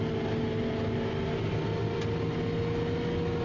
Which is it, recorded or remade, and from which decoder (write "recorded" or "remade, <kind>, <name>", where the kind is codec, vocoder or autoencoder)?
recorded